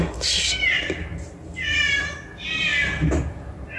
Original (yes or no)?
yes